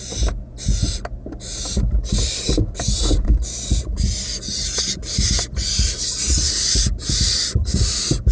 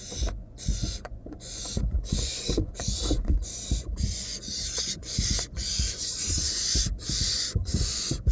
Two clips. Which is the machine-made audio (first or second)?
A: second